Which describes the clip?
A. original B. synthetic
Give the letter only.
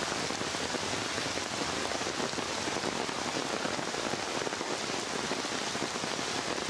A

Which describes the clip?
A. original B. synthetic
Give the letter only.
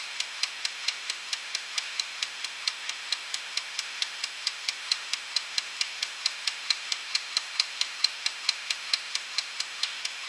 B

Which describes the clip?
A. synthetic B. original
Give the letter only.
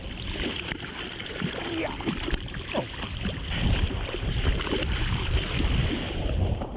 A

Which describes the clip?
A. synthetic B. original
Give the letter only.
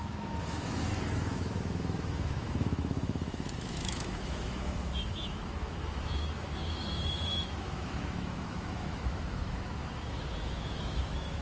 A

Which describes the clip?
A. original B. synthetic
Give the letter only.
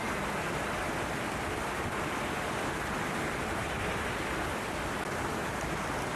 A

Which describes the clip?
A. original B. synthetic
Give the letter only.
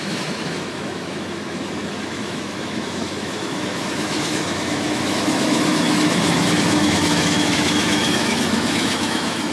B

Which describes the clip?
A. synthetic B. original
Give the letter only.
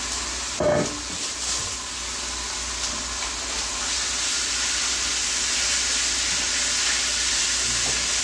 B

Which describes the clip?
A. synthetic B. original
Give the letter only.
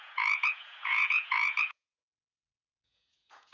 A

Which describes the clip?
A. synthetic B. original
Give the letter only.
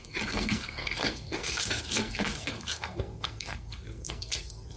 A